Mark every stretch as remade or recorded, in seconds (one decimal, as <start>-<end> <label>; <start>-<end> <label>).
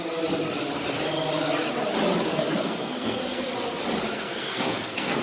0.0-2.3 recorded; 2.3-3.4 remade; 3.4-4.1 recorded; 4.1-5.2 remade